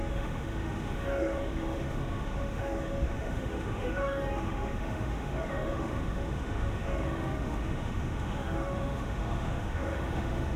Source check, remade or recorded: remade